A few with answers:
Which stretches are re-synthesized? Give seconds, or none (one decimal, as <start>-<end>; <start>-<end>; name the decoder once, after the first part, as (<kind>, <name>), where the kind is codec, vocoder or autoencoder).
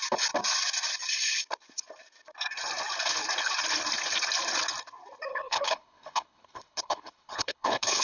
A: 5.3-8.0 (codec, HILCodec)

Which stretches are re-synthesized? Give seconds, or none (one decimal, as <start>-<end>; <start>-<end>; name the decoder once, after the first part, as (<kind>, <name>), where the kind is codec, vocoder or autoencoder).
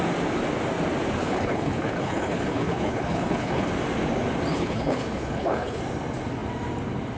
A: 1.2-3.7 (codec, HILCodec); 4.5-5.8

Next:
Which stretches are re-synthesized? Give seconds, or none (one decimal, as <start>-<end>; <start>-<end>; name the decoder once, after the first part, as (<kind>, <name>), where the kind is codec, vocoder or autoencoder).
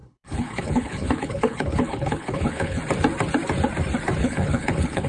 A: 0.0-2.8 (codec, HILCodec); 4.2-5.1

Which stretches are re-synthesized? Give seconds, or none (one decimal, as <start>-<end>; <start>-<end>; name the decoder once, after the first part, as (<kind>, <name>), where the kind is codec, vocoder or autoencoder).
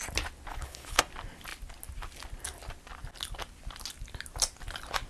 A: 0.5-1.0 (codec, HILCodec)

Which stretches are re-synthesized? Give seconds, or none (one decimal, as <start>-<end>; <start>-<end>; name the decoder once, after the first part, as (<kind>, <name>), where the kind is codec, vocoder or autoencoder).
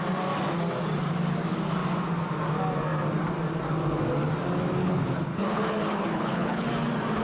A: 4.8-6.7 (codec, HILCodec)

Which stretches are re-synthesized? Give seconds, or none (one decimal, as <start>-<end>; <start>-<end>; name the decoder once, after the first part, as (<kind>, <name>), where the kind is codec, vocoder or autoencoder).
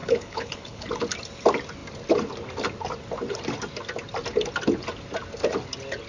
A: 0.0-0.9 (codec, HILCodec)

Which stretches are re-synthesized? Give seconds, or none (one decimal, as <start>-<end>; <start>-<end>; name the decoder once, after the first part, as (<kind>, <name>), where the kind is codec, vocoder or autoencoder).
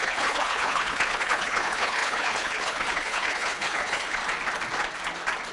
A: 0.0-4.2 (codec, HILCodec)